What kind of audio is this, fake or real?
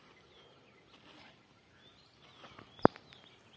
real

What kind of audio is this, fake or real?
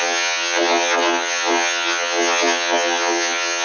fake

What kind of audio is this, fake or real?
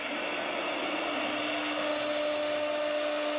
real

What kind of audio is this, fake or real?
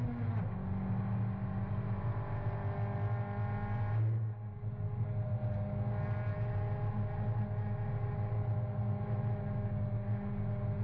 real